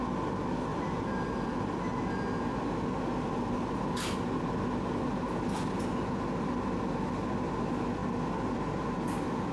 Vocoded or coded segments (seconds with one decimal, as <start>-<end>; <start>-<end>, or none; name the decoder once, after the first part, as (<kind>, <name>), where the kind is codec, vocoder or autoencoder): 0.7-1.5 (vocoder, BigVGAN v2); 8.0-8.7